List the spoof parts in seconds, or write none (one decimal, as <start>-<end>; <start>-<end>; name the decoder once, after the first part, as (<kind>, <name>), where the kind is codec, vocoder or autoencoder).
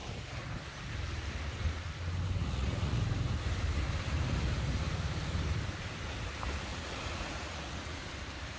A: 2.4-3.0 (vocoder, Vocos); 6.7-8.0